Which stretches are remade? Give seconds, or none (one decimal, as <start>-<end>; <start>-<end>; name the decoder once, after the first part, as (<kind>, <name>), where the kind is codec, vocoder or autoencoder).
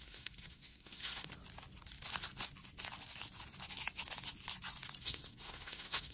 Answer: 0.0-1.3 (codec, SNAC); 5.0-6.1